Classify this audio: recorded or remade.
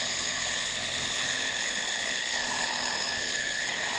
remade